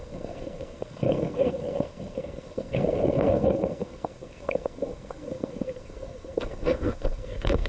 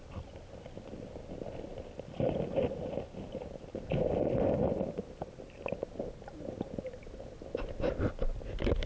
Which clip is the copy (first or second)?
first